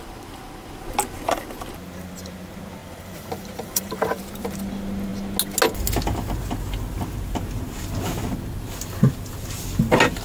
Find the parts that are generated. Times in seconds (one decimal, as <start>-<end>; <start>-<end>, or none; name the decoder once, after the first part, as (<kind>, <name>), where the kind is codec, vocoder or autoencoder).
2.8-4.2 (vocoder, BigVGAN v2)